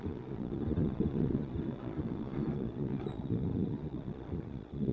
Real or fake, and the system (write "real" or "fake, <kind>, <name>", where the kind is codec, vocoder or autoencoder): fake, vocoder, Vocos